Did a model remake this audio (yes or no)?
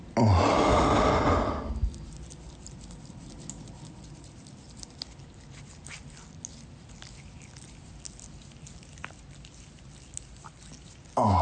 no